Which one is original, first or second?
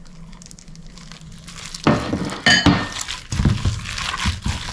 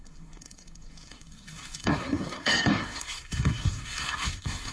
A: first